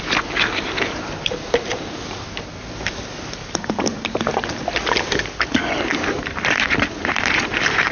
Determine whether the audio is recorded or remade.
recorded